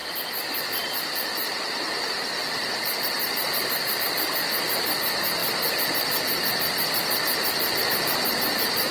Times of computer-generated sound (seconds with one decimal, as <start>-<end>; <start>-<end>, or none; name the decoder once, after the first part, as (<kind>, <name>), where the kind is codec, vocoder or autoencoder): 0.0-5.4 (vocoder, BigVGAN v2); 7.8-8.9

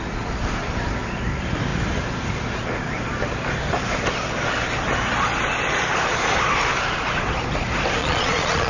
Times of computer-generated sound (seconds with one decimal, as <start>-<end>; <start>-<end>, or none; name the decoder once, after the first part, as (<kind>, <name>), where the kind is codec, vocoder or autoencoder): 8.0-8.7 (vocoder, Vocos)

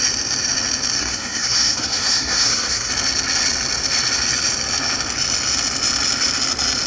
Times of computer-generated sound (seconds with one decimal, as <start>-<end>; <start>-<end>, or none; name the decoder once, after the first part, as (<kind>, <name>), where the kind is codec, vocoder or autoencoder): 1.0-2.9 (codec, SNAC)

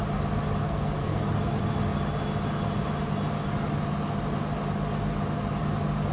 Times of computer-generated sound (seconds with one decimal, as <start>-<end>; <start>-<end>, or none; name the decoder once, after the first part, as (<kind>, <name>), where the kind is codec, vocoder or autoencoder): 0.6-1.3 (codec, SNAC)

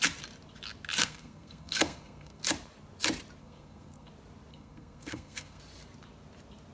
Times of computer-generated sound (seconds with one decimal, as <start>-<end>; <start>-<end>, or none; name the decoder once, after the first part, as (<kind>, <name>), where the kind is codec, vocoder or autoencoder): 1.0-2.4 (codec, SNAC); 3.4-4.1; 4.5-5.6

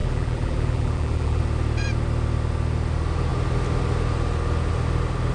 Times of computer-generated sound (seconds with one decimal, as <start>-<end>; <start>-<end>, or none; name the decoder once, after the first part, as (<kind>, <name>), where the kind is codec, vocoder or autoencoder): 0.0-1.4 (vocoder, BigVGAN v2)

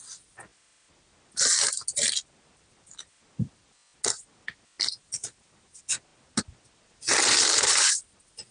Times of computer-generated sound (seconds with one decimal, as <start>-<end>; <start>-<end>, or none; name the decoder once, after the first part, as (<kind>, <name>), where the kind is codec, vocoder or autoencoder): none

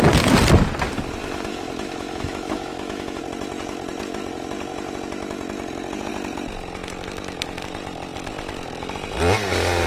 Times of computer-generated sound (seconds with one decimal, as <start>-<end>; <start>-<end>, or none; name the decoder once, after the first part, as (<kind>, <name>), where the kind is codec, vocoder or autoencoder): 1.2-3.2 (autoencoder, DAC-VAE)